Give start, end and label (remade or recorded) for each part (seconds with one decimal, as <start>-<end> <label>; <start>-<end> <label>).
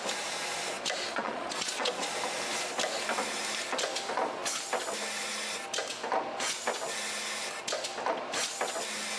0.0-1.1 recorded; 1.1-2.1 remade; 2.1-9.2 recorded